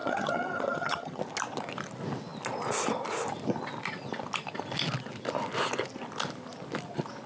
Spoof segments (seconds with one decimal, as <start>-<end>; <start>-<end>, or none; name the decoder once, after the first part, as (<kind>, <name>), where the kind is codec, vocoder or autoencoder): 0.0-1.2 (vocoder, HiFi-GAN)